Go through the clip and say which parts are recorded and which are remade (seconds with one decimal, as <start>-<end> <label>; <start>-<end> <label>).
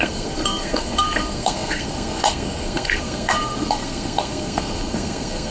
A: 0.0-5.5 remade